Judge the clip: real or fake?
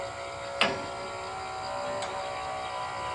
real